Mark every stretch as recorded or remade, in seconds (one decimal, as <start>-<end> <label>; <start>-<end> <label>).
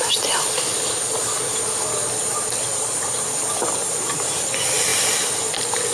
0.0-5.9 recorded